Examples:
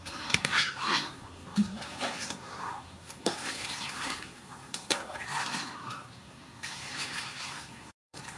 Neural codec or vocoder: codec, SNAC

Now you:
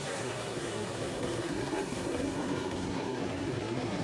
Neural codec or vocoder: codec, SNAC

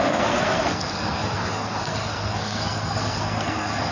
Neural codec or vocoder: codec, SNAC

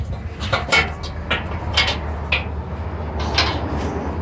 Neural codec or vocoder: none